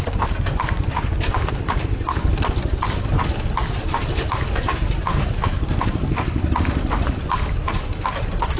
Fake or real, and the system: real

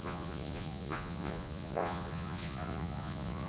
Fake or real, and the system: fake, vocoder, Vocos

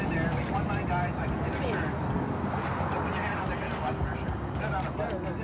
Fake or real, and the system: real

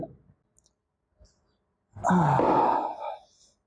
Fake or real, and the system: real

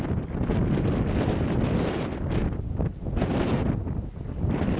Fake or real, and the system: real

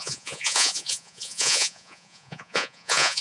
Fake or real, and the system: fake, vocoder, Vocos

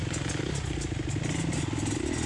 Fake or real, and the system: real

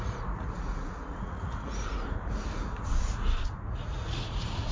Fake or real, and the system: fake, vocoder, Vocos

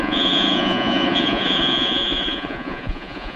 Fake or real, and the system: fake, vocoder, Vocos